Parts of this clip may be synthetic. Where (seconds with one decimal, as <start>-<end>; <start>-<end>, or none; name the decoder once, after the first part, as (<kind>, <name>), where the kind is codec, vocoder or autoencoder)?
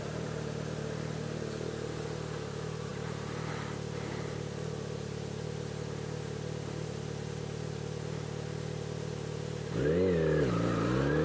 2.9-3.5 (vocoder, BigVGAN v2)